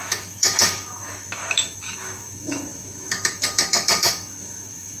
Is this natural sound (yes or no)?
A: no